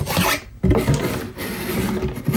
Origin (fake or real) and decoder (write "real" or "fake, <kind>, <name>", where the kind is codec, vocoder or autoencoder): real